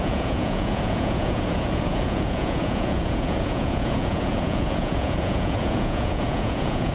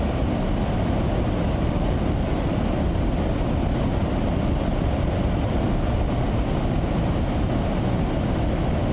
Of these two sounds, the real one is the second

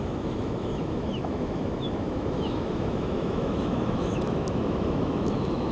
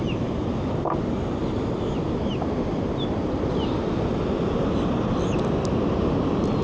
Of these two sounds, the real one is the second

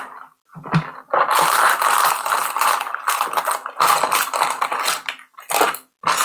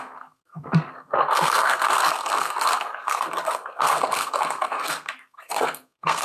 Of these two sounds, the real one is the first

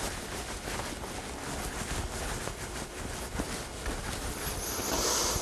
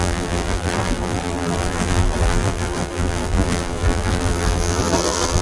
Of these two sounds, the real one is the first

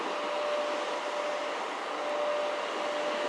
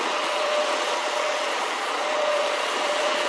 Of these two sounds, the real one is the first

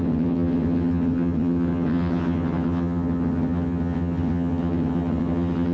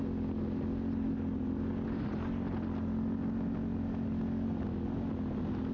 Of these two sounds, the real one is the second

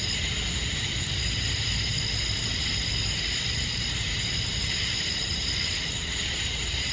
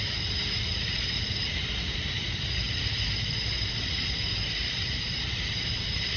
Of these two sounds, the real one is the first